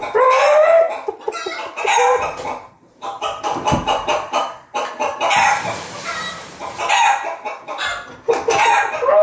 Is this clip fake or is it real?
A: fake